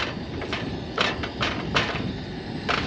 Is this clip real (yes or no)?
yes